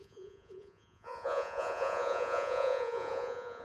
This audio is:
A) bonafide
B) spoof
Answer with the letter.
B